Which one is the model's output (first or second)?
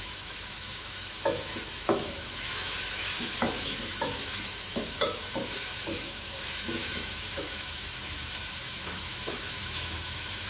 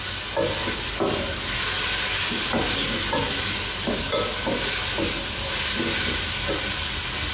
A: first